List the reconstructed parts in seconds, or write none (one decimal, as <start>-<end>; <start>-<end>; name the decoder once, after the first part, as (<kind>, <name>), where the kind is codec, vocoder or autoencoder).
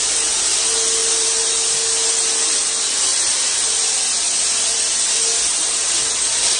1.0-1.5 (vocoder, BigVGAN v2)